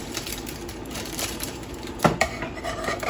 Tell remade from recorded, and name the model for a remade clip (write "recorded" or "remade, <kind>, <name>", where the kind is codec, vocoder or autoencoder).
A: remade, vocoder, BigVGAN v2